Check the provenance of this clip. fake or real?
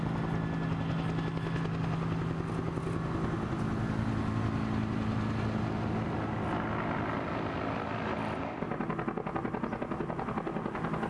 real